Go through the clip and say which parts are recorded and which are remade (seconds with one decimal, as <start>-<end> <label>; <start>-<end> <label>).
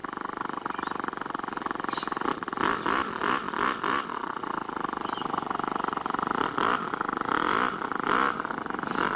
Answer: 0.0-9.2 recorded